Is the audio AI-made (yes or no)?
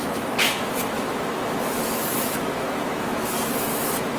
yes